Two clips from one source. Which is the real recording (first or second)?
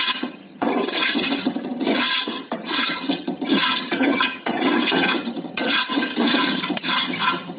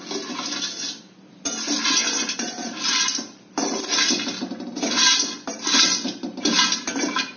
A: second